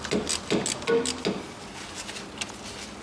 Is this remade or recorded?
recorded